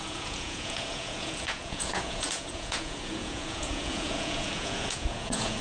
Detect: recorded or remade remade